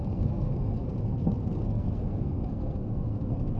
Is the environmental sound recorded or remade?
remade